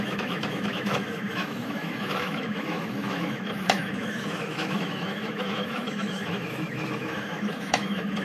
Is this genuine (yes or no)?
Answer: no